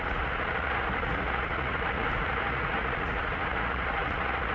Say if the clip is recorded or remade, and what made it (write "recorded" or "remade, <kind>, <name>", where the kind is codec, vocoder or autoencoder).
remade, vocoder, Vocos